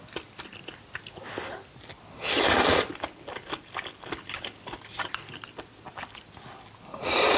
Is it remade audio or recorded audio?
remade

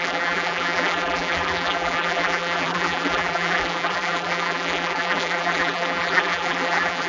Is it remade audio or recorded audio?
remade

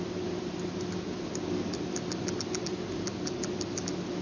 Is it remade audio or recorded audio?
recorded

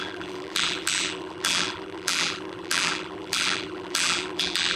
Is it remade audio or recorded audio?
remade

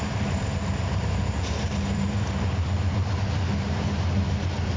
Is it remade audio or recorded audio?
remade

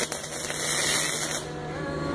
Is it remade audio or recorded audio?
recorded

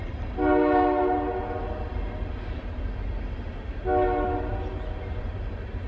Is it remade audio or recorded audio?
recorded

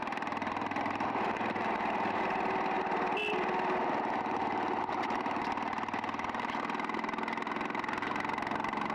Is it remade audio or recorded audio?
recorded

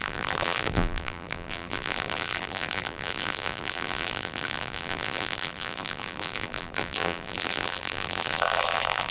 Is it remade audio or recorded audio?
remade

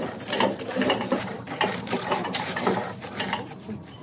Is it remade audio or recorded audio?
remade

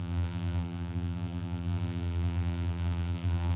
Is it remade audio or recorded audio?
remade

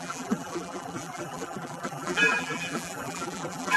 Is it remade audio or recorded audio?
remade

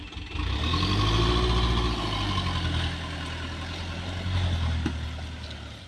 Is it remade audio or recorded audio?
recorded